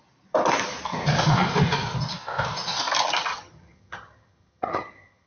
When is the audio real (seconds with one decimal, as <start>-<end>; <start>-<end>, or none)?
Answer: 0.0-3.3